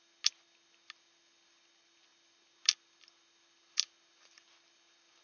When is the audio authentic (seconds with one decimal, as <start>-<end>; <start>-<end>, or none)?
0.0-5.2